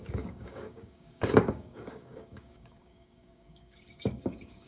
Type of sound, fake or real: fake